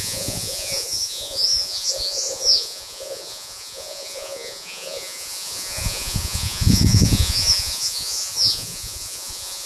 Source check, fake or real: fake